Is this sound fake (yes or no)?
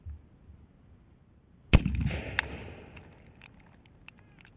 no